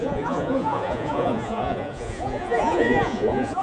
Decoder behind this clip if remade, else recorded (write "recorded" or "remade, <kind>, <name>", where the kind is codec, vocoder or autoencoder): remade, vocoder, Vocos